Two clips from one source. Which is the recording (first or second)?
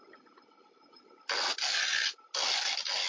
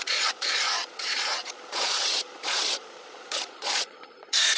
first